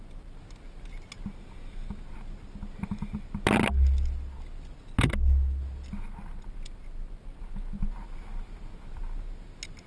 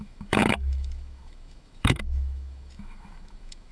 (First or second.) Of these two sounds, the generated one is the second